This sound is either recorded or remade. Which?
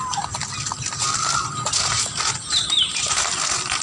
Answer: recorded